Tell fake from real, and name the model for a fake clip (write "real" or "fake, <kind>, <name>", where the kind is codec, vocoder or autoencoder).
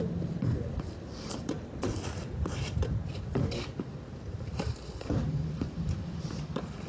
fake, vocoder, BigVGAN v2